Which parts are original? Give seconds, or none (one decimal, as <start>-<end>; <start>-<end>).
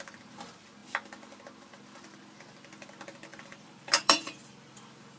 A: 0.0-3.3; 4.8-5.2